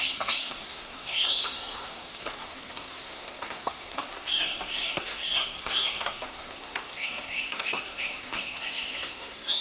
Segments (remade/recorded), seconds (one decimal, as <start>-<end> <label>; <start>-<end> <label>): 0.0-9.6 remade

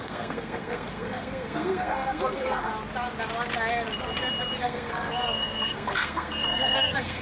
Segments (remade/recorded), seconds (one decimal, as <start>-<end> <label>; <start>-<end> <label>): 0.0-2.7 remade; 2.7-4.6 recorded; 4.6-7.2 remade

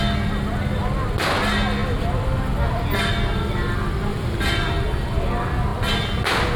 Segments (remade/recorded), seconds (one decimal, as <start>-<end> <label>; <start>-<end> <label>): 0.0-4.1 recorded; 4.1-4.8 remade; 4.8-6.6 recorded

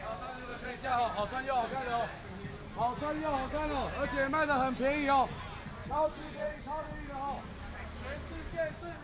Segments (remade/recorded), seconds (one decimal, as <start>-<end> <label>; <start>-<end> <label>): 0.0-0.5 recorded; 0.5-1.0 remade; 1.0-5.8 recorded; 5.8-6.6 remade; 6.6-9.0 recorded

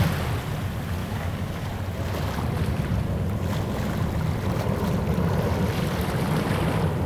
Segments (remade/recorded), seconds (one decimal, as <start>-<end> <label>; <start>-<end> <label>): 0.0-1.0 recorded; 1.0-1.7 remade; 1.7-7.1 recorded

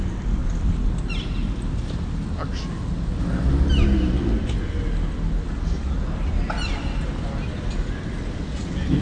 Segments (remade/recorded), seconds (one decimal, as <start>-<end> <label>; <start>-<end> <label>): 0.0-9.0 recorded

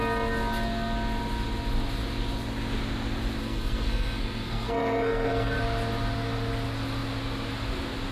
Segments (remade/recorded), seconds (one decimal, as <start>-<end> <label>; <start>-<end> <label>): 0.0-3.4 recorded; 3.4-5.6 remade; 5.6-8.1 recorded

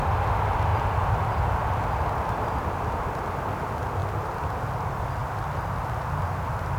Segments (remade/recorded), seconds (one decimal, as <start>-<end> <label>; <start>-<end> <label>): 0.0-6.8 recorded